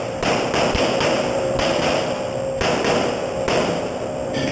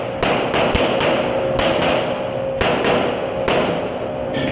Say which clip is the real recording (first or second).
second